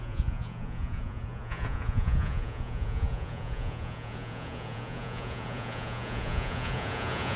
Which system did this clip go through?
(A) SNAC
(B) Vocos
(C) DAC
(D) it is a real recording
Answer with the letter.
B